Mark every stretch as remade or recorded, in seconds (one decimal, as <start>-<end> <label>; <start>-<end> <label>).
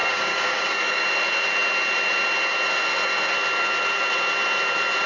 0.0-1.0 remade; 1.0-5.1 recorded